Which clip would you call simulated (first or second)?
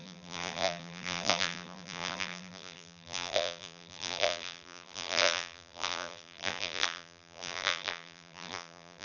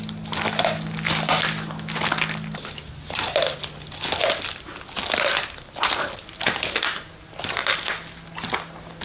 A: first